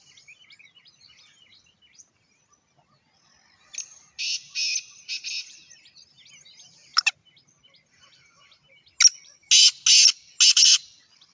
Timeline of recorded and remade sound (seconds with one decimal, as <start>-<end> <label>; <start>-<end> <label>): 0.0-11.3 recorded